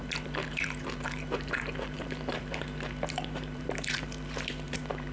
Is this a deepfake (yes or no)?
yes